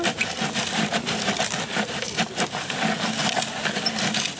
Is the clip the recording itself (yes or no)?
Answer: yes